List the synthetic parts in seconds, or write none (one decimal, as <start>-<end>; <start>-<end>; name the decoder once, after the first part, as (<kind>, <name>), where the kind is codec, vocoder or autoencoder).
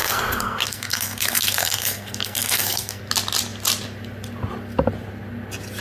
0.0-3.0 (codec, SNAC)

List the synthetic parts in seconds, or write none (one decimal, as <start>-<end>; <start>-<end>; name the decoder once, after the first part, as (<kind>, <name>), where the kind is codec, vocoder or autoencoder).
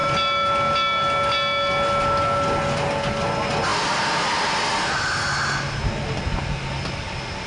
none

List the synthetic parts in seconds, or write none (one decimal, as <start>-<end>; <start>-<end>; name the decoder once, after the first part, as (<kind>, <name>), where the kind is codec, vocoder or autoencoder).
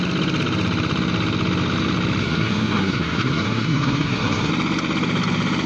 2.2-4.5 (codec, SNAC)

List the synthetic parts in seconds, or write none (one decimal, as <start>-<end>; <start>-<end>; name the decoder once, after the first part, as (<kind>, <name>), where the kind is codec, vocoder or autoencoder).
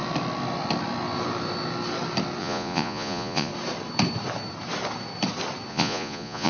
2.4-3.5 (vocoder, Vocos); 5.7-6.5